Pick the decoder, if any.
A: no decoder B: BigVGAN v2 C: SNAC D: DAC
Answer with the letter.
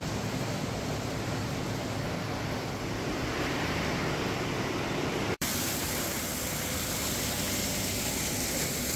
B